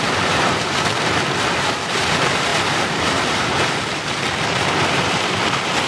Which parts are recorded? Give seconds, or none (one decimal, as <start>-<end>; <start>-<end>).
none